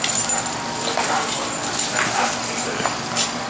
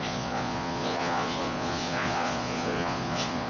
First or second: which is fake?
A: second